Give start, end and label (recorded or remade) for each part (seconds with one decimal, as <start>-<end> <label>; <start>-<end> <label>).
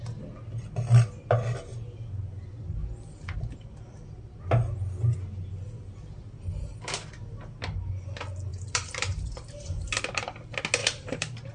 0.0-8.5 recorded; 8.5-10.0 remade; 10.0-10.8 recorded; 10.8-11.5 remade